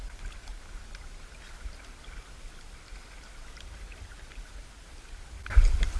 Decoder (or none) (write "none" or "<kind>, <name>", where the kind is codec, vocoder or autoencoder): none